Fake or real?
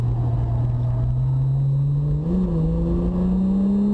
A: real